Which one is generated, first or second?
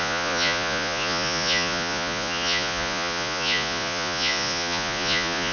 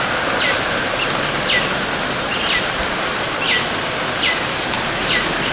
first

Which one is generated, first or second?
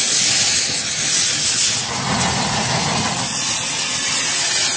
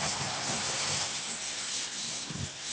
second